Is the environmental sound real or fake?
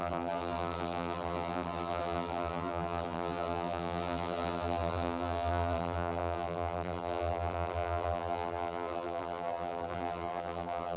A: fake